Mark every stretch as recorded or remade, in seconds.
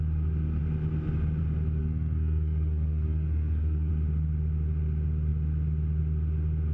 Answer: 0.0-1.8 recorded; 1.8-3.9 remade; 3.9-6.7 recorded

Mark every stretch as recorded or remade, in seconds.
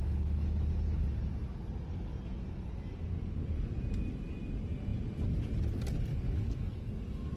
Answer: 0.0-6.1 recorded; 6.1-6.9 remade; 6.9-7.4 recorded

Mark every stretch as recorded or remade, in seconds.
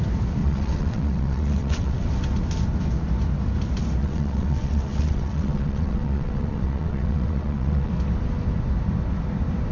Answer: 0.0-0.4 recorded; 0.4-2.1 remade; 2.1-4.0 recorded; 4.0-7.9 remade; 7.9-9.7 recorded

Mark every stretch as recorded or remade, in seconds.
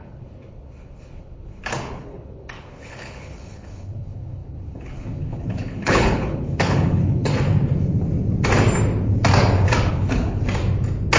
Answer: 0.0-7.3 remade; 7.3-9.9 recorded; 9.9-10.4 remade; 10.4-11.2 recorded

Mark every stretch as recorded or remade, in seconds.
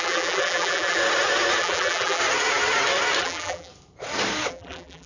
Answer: 0.0-1.0 remade; 1.0-1.6 recorded; 1.6-2.2 remade; 2.2-3.2 recorded; 3.2-3.7 remade; 3.7-4.5 recorded; 4.5-5.1 remade